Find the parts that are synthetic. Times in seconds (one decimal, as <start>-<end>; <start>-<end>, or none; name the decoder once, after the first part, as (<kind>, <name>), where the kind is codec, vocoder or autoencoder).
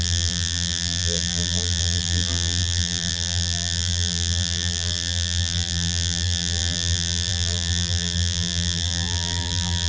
0.0-9.9 (vocoder, BigVGAN v2)